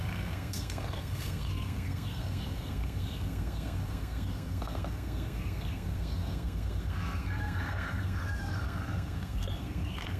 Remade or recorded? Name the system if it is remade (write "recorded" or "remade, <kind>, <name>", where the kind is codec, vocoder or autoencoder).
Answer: remade, codec, SNAC